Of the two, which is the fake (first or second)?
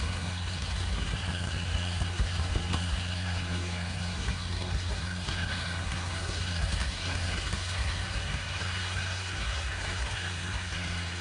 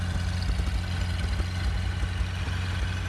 first